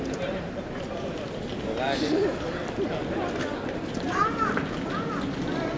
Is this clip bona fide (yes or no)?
yes